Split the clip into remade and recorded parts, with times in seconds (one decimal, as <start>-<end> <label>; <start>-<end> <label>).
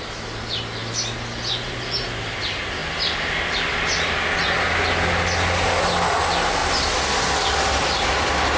0.0-8.6 recorded